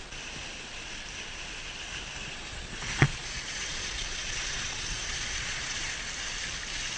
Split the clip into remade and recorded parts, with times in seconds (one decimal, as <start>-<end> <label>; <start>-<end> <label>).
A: 0.0-2.2 recorded; 2.2-5.9 remade; 5.9-7.0 recorded